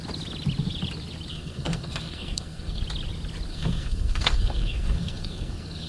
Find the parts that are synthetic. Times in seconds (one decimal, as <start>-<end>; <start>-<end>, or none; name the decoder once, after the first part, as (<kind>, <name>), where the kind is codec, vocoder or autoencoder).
1.3-2.8 (codec, SNAC); 3.5-5.9